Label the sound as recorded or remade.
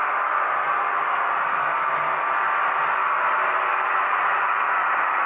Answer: recorded